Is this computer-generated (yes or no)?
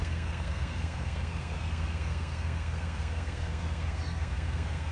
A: yes